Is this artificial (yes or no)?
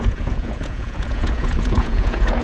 yes